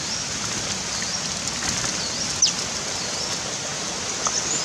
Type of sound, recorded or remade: recorded